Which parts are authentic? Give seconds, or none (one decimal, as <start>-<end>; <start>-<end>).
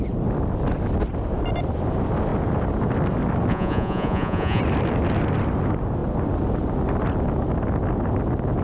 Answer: 0.0-3.5; 4.6-8.6